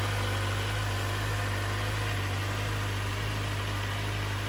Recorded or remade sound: recorded